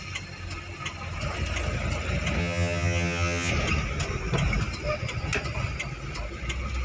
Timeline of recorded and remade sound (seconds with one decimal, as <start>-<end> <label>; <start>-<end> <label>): 0.0-2.4 recorded; 2.4-3.5 remade; 3.5-6.8 recorded